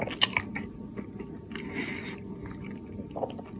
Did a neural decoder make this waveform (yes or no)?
no